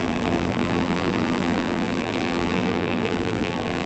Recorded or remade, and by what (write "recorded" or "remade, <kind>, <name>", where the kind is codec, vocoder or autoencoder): remade, vocoder, BigVGAN v2